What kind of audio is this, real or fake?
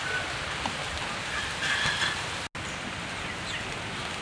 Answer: real